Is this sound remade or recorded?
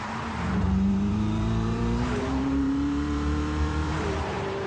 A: remade